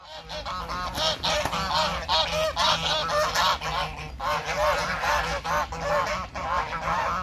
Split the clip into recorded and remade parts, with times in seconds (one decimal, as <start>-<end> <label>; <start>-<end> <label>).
0.0-7.2 recorded